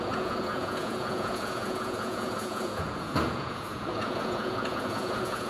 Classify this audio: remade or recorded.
remade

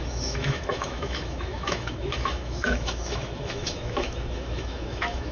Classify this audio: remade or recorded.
remade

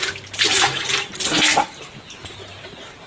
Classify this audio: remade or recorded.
remade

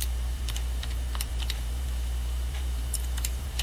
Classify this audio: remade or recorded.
remade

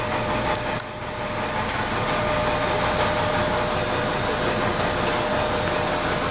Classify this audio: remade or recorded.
recorded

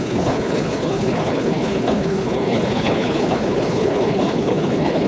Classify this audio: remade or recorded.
remade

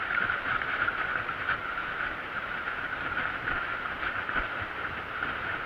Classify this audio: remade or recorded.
remade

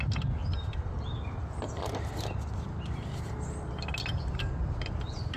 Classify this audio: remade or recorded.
recorded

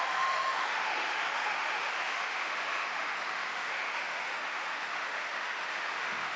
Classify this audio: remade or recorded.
remade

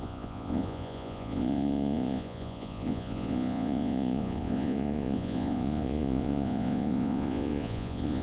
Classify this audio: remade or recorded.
remade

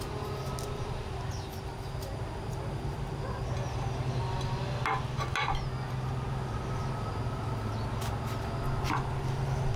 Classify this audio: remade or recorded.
recorded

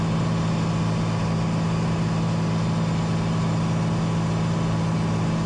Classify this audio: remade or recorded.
recorded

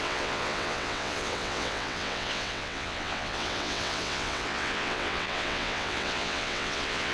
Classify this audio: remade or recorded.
remade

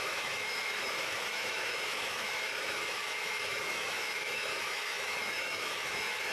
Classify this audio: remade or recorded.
remade